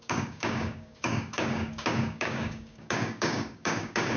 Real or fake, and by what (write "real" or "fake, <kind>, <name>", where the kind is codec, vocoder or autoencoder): fake, codec, DAC